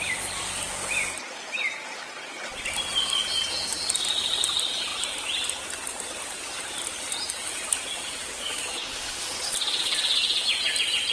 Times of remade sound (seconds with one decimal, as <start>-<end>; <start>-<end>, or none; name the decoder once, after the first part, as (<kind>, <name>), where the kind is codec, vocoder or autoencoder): 8.2-9.4 (codec, DAC)

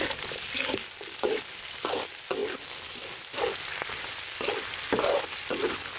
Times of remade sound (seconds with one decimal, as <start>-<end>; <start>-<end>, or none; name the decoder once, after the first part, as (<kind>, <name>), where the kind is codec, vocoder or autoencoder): none

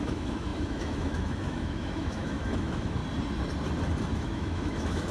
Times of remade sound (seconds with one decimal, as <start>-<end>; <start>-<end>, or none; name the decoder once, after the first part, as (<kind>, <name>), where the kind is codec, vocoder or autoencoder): 0.0-3.0 (autoencoder, DAC-VAE); 4.1-5.1

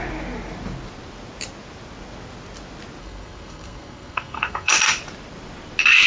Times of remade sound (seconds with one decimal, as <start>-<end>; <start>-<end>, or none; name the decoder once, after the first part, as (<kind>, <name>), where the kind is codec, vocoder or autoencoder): 3.0-4.7 (codec, SNAC)

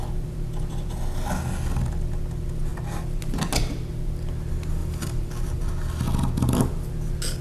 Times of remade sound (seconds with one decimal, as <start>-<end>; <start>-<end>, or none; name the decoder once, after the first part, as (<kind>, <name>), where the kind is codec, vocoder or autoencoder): 4.8-5.7 (vocoder, BigVGAN v2)